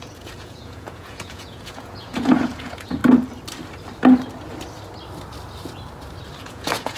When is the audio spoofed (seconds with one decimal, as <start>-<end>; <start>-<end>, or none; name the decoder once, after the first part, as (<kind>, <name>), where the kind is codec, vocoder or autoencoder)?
0.0-3.0 (vocoder, Vocos); 6.4-7.0